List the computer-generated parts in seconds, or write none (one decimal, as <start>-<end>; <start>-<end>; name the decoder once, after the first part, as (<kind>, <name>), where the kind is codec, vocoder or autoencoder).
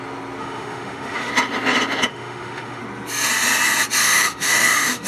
0.4-1.3 (autoencoder, DAC-VAE); 2.1-2.8; 4.0-5.1